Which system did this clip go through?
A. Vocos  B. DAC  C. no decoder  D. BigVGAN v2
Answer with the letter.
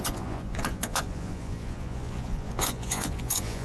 A